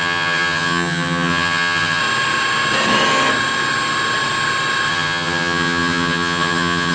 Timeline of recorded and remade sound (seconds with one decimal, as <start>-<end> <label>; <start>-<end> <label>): 0.0-2.0 remade; 2.0-4.9 recorded; 4.9-6.9 remade

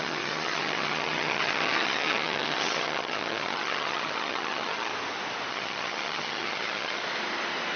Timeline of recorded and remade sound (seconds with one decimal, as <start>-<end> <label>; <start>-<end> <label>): 0.0-4.9 remade; 4.9-5.5 recorded; 5.5-7.0 remade; 7.0-7.8 recorded

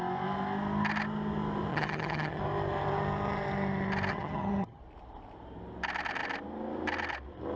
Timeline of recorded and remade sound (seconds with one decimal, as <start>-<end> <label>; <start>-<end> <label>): 0.0-1.7 recorded; 1.7-2.4 remade; 2.4-4.1 recorded; 4.1-4.8 remade; 4.8-7.6 recorded

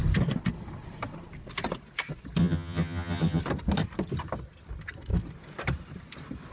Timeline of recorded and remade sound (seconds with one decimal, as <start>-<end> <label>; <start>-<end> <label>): 0.0-2.4 recorded; 2.4-3.4 remade; 3.4-6.5 recorded